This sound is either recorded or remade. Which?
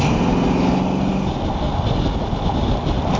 recorded